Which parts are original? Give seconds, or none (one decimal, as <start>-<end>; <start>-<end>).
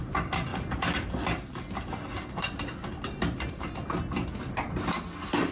0.0-5.5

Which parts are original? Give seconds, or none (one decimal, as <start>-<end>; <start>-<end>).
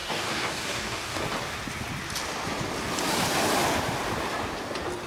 1.2-5.1